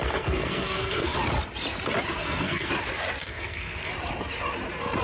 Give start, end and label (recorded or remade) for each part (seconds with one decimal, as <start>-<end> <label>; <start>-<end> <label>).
0.0-1.2 remade; 1.2-2.2 recorded; 2.2-2.7 remade; 2.7-3.2 recorded; 3.2-3.9 remade; 3.9-5.0 recorded